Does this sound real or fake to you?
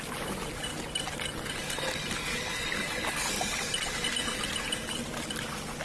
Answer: real